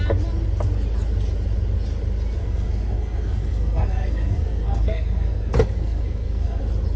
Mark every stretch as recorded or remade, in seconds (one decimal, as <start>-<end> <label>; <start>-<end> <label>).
0.0-2.4 recorded; 2.4-6.6 remade; 6.6-7.0 recorded